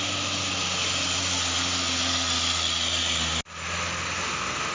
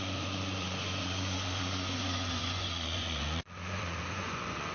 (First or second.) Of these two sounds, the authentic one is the first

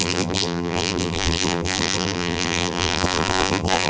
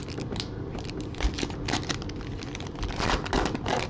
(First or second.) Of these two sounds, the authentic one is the second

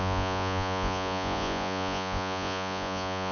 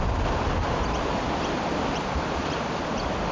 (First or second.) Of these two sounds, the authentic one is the second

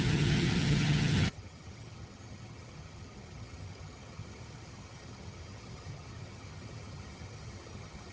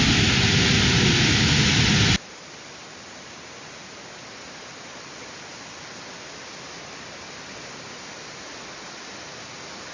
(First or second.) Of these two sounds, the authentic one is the second